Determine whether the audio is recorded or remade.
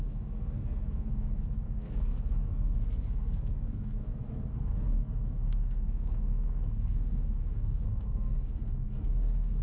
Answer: remade